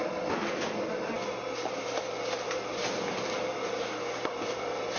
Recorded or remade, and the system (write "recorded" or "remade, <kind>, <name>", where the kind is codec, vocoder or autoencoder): recorded